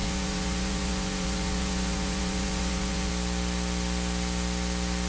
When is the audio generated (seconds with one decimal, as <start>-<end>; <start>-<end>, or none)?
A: 0.0-3.1

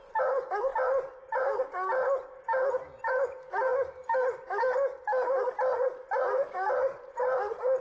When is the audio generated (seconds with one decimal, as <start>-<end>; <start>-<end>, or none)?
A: none

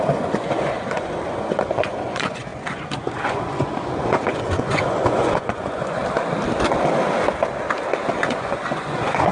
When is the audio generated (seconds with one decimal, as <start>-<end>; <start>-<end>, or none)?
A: 0.0-6.0; 8.2-9.3

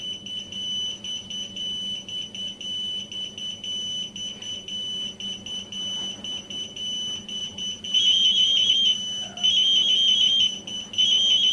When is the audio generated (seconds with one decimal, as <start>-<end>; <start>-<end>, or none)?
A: 7.4-8.7

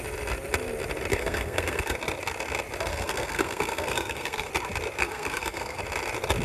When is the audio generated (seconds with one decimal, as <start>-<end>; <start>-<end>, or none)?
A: 1.1-2.0; 2.9-4.5; 5.0-5.8